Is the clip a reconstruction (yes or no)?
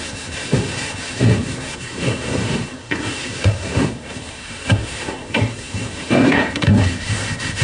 yes